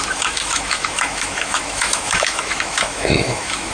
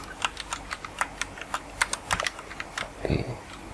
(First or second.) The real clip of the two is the second